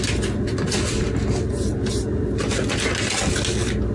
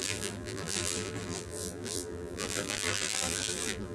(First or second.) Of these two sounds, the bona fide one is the first